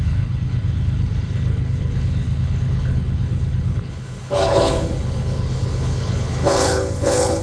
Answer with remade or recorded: remade